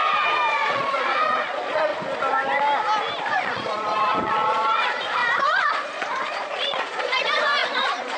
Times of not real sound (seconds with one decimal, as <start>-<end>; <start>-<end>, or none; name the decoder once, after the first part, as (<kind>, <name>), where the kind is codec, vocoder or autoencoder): 0.5-1.9 (vocoder, Vocos); 3.3-8.2